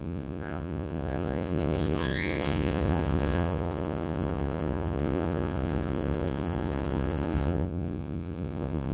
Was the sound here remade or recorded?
remade